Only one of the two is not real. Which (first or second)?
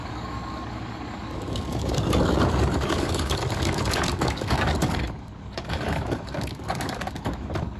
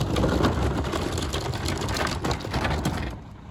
first